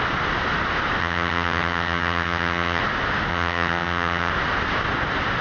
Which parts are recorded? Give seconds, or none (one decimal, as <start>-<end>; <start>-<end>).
0.0-1.0; 2.8-3.3; 4.3-5.4